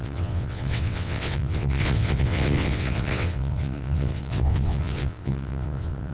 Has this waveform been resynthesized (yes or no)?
yes